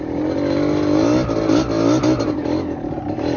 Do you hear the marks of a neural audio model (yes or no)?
no